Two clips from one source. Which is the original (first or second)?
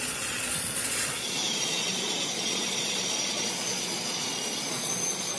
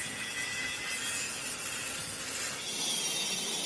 second